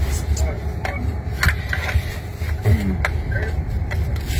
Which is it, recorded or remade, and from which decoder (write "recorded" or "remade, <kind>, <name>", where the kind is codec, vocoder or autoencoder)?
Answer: recorded